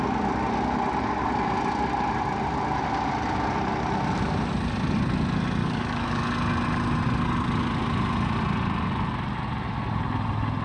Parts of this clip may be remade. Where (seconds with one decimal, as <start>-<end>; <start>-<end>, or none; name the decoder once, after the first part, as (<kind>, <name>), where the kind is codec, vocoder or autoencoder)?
5.6-6.2 (codec, DAC)